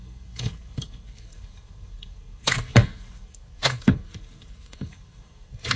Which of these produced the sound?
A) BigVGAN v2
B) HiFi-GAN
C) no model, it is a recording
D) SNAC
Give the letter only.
D